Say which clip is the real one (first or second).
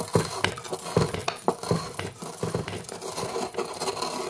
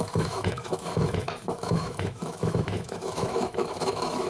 first